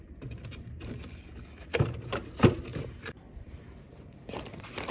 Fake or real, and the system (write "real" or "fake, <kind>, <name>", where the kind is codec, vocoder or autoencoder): fake, vocoder, BigVGAN v2